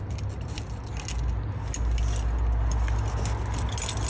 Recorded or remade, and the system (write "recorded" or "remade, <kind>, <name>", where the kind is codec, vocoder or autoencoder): recorded